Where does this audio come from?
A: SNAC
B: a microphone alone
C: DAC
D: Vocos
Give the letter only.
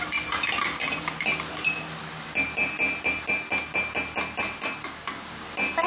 B